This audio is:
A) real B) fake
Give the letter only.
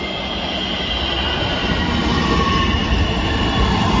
A